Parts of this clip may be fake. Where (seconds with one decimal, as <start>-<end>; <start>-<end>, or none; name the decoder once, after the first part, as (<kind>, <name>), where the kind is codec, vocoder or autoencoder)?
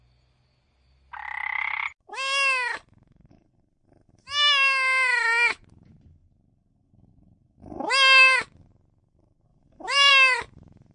9.5-10.1 (vocoder, BigVGAN v2)